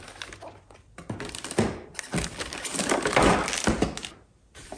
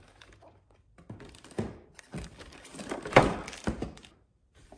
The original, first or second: first